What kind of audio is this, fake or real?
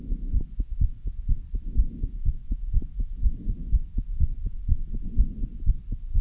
real